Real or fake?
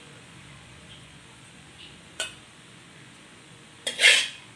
fake